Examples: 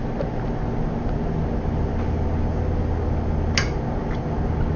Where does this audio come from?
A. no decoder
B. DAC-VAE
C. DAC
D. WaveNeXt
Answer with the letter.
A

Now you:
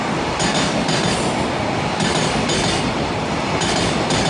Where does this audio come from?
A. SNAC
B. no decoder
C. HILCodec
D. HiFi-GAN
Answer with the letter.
B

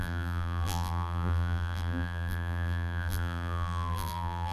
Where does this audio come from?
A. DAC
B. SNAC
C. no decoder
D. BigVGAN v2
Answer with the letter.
D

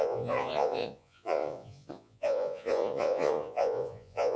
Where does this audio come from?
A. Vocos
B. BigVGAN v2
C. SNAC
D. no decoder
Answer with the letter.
A